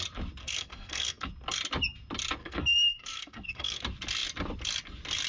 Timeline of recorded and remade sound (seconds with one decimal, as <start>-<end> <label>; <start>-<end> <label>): 0.0-0.4 recorded; 0.4-1.3 remade; 1.3-2.4 recorded; 2.4-3.8 remade; 3.8-5.3 recorded